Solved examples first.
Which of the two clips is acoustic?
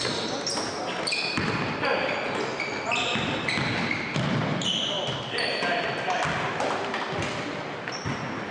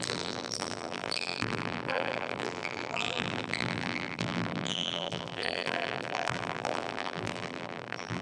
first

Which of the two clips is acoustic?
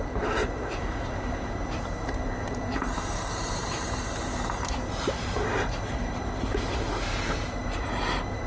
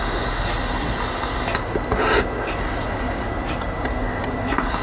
second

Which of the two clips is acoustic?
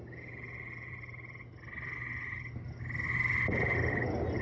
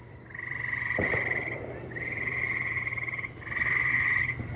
first